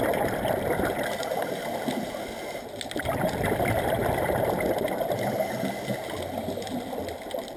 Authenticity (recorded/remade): recorded